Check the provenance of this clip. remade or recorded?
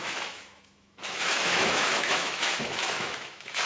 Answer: remade